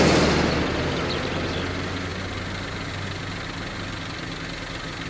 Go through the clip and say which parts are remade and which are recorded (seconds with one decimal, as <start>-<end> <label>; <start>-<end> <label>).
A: 0.0-5.1 recorded